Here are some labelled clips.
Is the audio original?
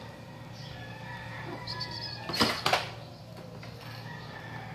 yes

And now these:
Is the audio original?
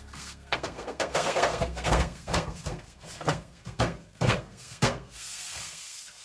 no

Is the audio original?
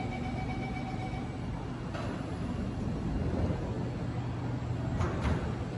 yes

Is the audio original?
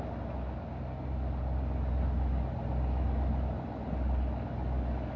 yes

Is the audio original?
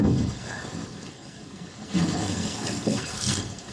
no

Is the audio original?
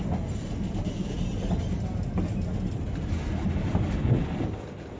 yes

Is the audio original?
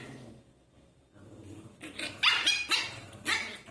yes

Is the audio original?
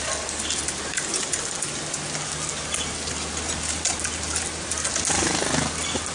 yes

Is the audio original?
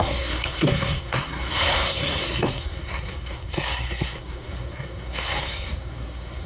no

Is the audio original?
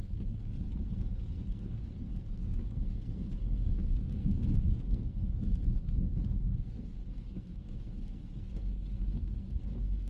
no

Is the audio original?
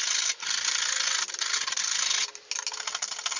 yes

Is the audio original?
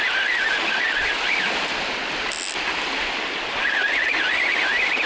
yes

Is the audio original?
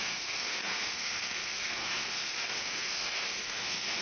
no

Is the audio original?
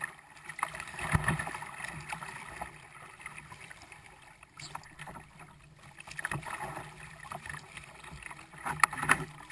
yes